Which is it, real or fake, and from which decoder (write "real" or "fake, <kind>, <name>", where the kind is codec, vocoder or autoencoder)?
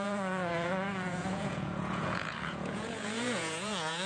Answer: fake, vocoder, Vocos